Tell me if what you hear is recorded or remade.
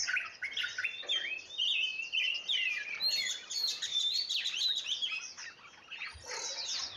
recorded